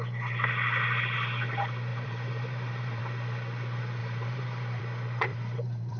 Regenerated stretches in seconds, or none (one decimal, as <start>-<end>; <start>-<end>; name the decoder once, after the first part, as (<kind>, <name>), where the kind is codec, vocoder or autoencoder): 1.9-3.0 (vocoder, BigVGAN v2); 4.0-4.8; 5.3-6.0